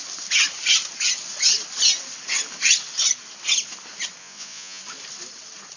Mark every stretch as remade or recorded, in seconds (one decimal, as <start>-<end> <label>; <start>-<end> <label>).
0.0-4.2 recorded; 4.2-4.8 remade; 4.8-5.8 recorded